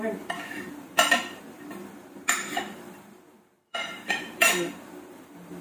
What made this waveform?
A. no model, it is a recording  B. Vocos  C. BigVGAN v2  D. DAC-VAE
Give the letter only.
C